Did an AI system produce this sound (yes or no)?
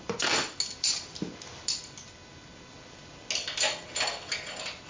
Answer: no